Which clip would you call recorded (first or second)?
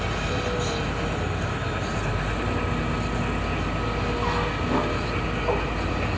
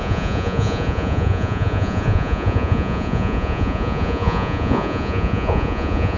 first